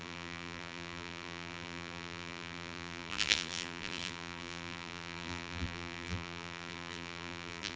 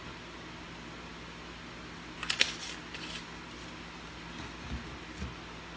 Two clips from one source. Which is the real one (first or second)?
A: second